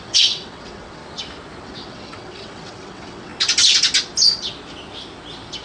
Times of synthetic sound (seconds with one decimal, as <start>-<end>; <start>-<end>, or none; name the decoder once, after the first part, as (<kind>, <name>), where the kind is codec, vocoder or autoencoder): 0.0-1.0 (vocoder, WaveNeXt); 1.6-3.3